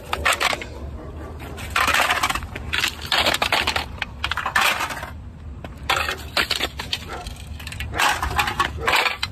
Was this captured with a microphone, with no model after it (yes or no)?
yes